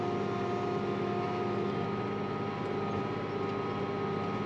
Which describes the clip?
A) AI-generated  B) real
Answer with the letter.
B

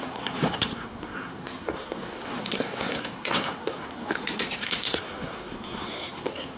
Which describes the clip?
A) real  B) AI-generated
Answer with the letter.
B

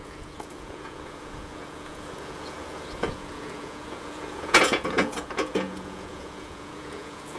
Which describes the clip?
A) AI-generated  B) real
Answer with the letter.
A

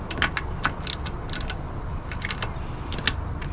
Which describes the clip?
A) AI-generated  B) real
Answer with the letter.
B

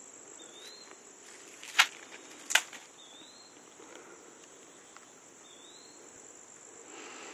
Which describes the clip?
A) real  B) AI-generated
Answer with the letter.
A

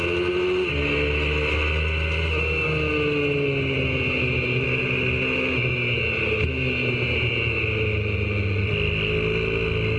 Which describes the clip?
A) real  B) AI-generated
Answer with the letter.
A